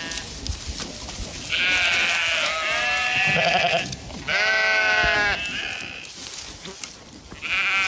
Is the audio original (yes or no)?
yes